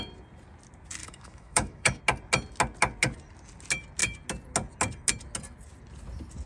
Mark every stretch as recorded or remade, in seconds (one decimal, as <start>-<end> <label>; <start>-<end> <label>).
0.0-1.0 recorded; 1.0-2.0 remade; 2.0-6.5 recorded